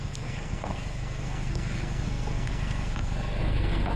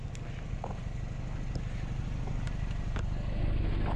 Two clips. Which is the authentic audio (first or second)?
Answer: second